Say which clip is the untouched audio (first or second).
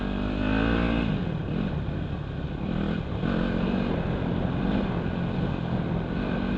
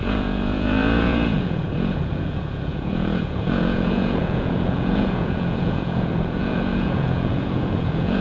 first